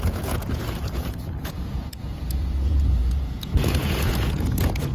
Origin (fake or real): fake